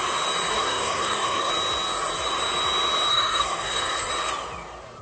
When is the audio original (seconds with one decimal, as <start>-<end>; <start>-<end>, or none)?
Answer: 0.0-0.5; 1.5-3.1; 4.1-5.0